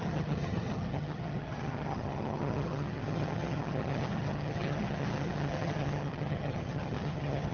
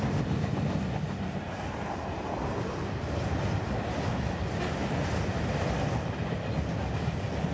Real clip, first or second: second